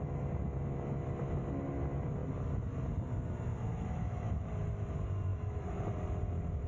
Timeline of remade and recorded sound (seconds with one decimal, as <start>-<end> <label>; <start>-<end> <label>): 0.0-3.7 recorded; 3.7-4.6 remade; 4.6-5.3 recorded; 5.3-5.8 remade; 5.8-6.7 recorded